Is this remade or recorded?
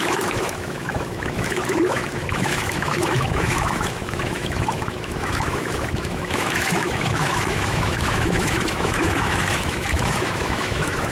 remade